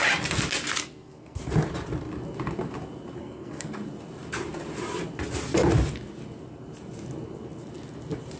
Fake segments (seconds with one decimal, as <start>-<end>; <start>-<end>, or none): 0.8-1.4; 3.2-3.7